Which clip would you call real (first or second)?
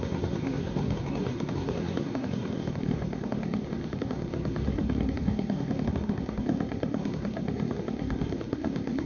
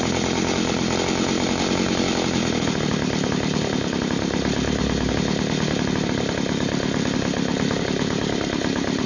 second